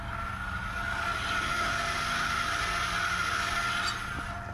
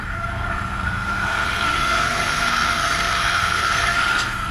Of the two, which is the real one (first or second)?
first